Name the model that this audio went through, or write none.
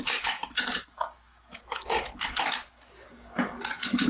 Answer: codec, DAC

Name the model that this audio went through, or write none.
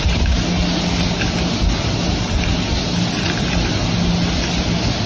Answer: none